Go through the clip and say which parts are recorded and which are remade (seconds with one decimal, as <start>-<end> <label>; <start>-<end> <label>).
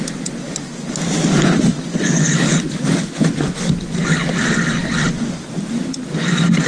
0.0-6.7 recorded